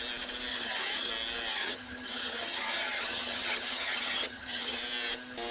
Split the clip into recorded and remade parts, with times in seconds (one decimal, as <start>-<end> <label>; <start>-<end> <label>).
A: 0.0-0.5 recorded; 0.5-1.1 remade; 1.1-1.5 recorded; 1.5-4.8 remade; 4.8-5.5 recorded